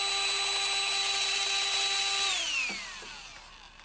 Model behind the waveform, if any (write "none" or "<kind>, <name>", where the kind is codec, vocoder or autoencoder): none